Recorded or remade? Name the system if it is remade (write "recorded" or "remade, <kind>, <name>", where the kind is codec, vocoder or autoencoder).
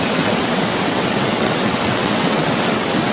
remade, vocoder, WaveNeXt